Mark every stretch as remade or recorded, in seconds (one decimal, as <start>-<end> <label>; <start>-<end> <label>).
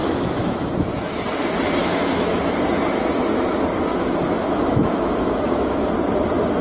0.0-0.7 remade; 0.7-1.8 recorded; 1.8-2.4 remade; 2.4-3.9 recorded; 3.9-5.9 remade; 5.9-6.6 recorded